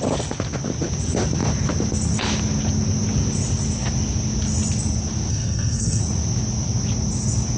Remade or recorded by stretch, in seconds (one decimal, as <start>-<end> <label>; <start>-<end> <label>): 0.0-5.3 recorded; 5.3-6.0 remade; 6.0-7.6 recorded